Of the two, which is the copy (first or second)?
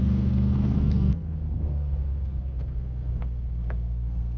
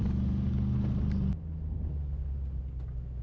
first